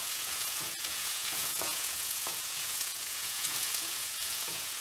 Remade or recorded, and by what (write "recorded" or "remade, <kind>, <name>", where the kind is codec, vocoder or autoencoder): remade, vocoder, Vocos